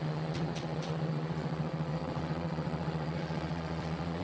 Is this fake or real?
fake